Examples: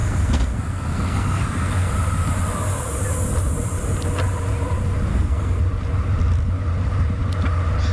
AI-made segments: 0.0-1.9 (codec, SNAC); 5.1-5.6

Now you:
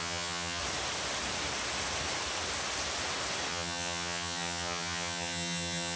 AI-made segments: 0.0-0.6 (vocoder, HiFi-GAN); 3.5-6.0

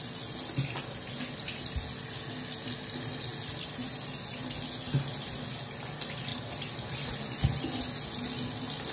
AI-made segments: none

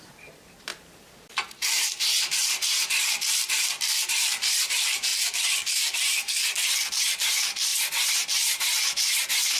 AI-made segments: 0.0-5.1 (vocoder, BigVGAN v2); 7.1-7.7; 8.3-9.6

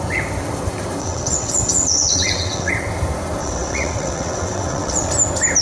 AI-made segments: 1.0-2.7 (vocoder, WaveNeXt); 3.4-5.1